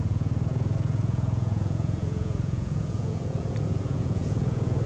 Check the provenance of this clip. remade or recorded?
remade